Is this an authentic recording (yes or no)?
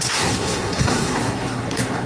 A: no